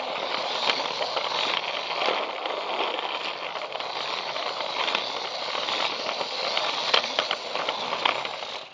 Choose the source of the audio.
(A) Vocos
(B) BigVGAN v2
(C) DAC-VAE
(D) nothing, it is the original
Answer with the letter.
D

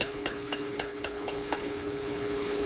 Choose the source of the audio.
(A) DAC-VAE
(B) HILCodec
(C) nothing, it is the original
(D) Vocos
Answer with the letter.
B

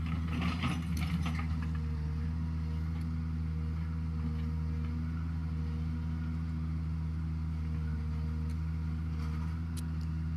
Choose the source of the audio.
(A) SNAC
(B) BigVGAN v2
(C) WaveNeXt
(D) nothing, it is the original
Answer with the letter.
D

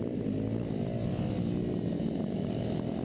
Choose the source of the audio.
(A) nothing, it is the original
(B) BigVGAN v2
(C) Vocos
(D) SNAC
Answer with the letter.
A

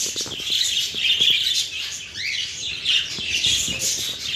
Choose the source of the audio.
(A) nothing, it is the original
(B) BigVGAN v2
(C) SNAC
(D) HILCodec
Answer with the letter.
A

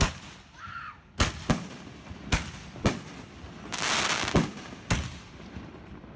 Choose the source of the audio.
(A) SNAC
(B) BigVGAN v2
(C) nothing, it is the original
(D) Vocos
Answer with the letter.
C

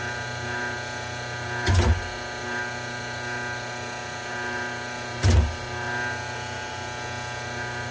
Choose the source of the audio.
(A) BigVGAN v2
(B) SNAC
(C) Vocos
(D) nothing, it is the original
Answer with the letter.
D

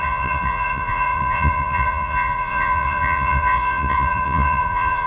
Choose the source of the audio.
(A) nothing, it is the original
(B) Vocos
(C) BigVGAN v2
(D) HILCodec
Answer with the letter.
B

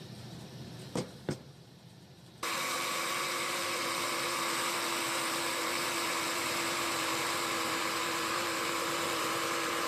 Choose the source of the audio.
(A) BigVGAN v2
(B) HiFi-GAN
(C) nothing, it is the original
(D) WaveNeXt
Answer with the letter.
A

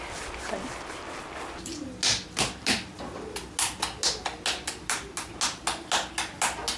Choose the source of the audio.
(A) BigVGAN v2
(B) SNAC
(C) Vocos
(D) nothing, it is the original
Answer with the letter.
D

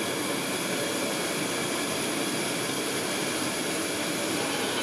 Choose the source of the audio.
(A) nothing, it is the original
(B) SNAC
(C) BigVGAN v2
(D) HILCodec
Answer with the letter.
A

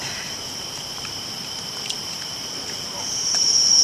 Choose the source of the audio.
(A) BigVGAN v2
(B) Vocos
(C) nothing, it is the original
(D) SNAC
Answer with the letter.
A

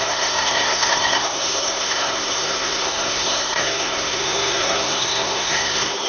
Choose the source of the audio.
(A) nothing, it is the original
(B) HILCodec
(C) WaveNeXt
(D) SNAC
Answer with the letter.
D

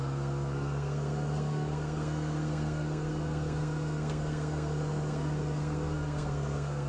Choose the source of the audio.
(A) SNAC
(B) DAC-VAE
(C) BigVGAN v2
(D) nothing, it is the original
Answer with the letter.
A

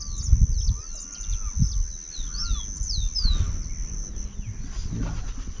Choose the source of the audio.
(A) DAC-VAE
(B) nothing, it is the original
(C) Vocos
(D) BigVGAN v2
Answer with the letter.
B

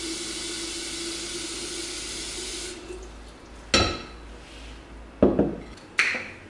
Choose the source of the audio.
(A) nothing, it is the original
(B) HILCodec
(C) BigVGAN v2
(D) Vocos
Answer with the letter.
A